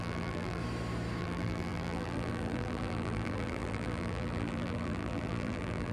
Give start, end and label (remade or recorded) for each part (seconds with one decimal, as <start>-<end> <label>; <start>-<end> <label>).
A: 0.0-0.6 remade; 0.6-1.2 recorded; 1.2-5.9 remade